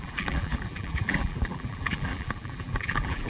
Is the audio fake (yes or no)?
yes